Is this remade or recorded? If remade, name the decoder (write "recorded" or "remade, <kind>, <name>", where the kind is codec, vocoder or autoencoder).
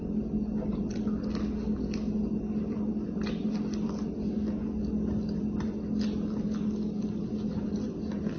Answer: recorded